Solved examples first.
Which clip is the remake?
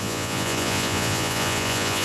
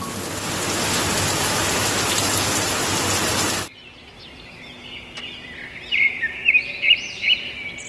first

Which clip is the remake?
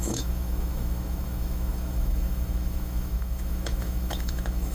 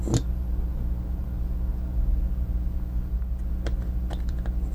first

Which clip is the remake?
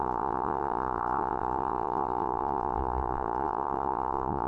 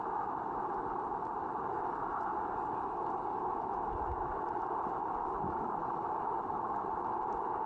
first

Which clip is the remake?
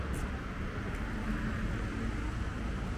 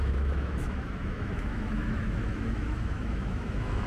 second